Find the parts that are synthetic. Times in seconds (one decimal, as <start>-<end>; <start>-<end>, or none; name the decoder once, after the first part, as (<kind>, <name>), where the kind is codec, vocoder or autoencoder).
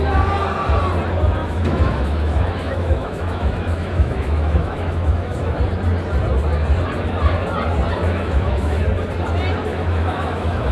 1.4-5.6 (autoencoder, DAC-VAE); 8.0-8.8; 9.7-10.7